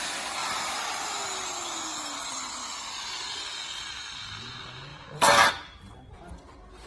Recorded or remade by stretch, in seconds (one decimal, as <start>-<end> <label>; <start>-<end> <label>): 0.0-0.4 recorded; 0.4-1.1 remade; 1.1-2.6 recorded; 2.6-3.9 remade; 3.9-4.9 recorded; 4.9-5.5 remade; 5.5-6.9 recorded